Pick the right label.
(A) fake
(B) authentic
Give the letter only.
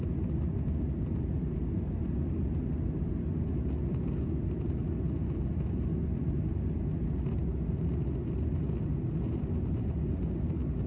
B